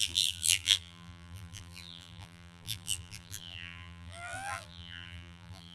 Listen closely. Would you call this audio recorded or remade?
remade